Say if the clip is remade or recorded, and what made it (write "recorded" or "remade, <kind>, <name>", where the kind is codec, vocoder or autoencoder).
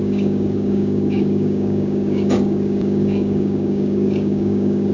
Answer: remade, codec, DAC